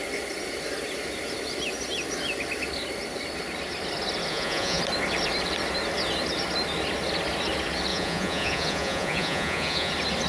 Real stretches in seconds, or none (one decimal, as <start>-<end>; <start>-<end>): 0.0-4.3; 4.8-7.9; 9.9-10.3